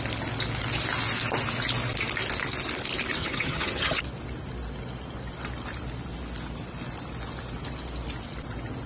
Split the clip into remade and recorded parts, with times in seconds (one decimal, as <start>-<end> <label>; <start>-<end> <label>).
0.0-3.2 recorded; 3.2-4.0 remade; 4.0-8.9 recorded